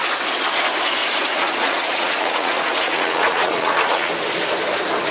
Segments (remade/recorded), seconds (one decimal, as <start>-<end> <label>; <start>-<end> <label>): 0.0-1.0 recorded; 1.0-4.1 remade; 4.1-5.1 recorded